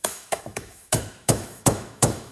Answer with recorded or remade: remade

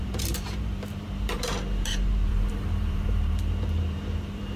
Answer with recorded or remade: remade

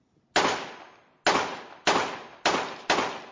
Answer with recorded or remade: recorded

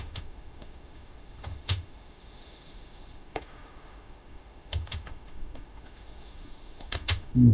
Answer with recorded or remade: remade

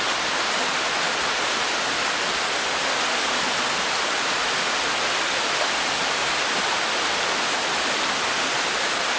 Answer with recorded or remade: recorded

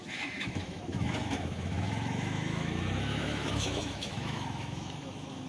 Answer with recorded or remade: remade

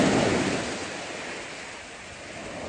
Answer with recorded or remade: recorded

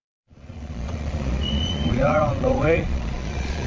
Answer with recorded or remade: remade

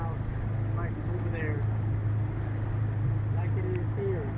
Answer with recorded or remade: recorded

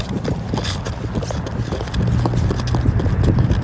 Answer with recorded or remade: recorded